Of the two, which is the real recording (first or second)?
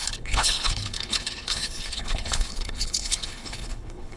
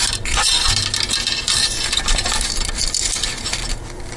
second